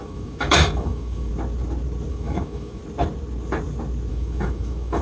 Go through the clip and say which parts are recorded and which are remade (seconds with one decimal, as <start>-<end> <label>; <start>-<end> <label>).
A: 0.0-1.3 remade; 1.3-2.1 recorded; 2.1-2.8 remade; 2.8-4.1 recorded; 4.1-5.0 remade